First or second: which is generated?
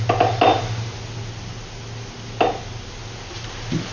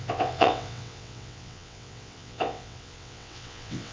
second